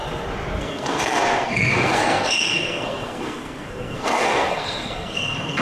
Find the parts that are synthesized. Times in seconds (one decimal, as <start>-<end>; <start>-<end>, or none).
0.6-5.6